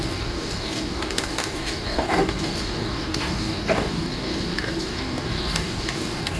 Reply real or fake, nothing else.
fake